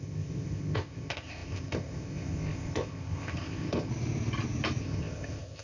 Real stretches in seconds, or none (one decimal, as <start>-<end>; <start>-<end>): 3.9-4.8